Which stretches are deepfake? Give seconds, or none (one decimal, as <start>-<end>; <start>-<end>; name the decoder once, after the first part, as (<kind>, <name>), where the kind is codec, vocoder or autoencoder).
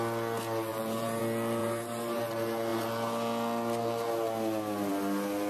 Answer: 0.7-1.2 (vocoder, BigVGAN v2); 1.6-2.2